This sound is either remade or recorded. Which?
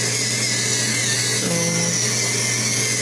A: recorded